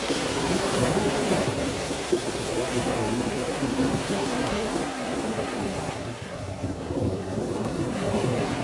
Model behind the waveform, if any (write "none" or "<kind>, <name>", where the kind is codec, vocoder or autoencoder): codec, SNAC